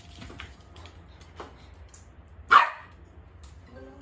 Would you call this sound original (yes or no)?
yes